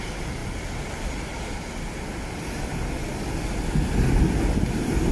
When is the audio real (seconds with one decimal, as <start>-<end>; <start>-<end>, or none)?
0.0-5.1